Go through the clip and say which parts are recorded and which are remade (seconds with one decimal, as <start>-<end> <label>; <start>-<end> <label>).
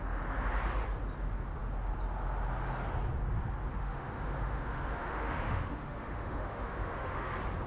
0.0-3.7 recorded; 3.7-7.3 remade; 7.3-7.7 recorded